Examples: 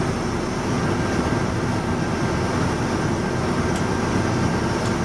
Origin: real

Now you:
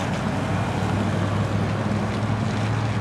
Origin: real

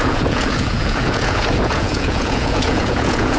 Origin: fake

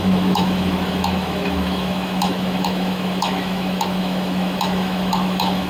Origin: fake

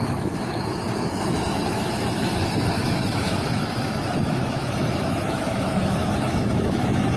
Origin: fake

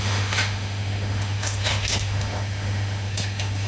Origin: fake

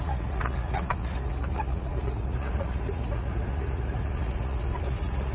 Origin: fake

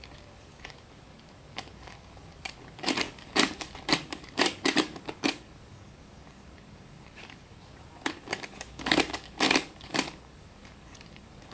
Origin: fake